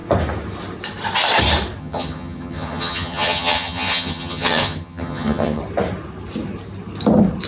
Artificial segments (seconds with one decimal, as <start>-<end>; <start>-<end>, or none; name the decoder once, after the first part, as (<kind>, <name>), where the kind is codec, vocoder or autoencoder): 1.8-5.6 (vocoder, HiFi-GAN)